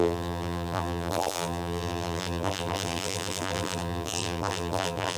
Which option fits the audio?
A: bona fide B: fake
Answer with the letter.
B